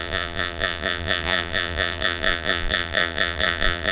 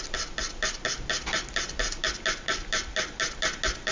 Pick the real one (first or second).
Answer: second